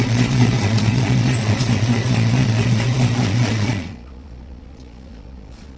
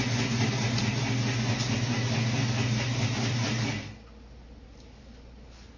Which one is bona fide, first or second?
second